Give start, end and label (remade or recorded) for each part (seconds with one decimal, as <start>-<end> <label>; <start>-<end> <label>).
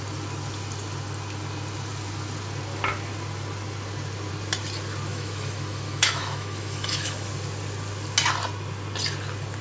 0.0-5.1 recorded; 5.1-7.3 remade; 7.3-9.6 recorded